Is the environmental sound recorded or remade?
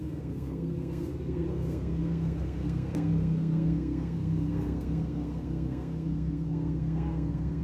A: remade